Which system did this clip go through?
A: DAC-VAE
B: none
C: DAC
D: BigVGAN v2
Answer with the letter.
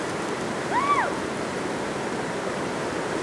B